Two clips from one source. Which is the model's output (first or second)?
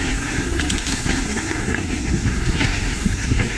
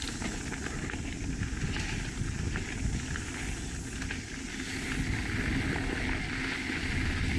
first